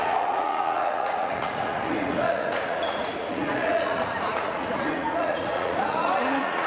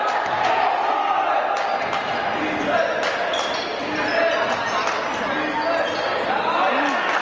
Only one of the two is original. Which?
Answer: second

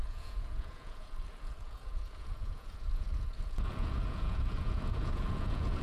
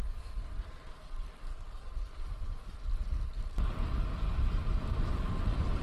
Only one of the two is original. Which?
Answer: second